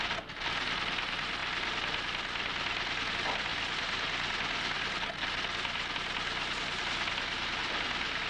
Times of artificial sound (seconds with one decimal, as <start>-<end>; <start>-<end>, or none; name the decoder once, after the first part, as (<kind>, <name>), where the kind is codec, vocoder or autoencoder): 7.6-8.3 (vocoder, BigVGAN v2)